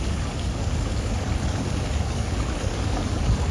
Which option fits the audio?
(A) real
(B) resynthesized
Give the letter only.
B